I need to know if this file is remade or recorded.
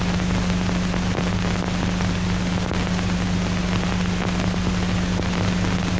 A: recorded